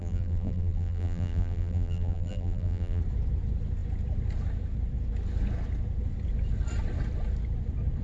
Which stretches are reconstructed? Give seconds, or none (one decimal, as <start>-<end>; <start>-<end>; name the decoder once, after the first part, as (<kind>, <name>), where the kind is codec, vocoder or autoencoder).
0.0-3.0 (vocoder, BigVGAN v2)